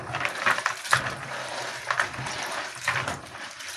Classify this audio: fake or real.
fake